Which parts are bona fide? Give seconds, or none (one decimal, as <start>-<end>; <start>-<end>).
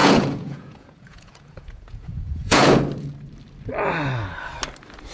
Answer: 2.8-5.1